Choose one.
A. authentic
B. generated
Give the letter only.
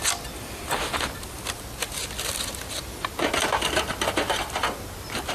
A